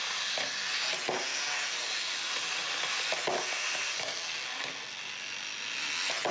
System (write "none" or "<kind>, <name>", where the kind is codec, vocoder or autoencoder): none